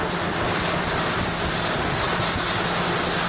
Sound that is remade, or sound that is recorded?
recorded